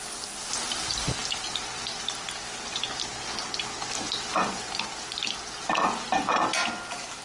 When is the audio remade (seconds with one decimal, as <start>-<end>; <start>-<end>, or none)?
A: none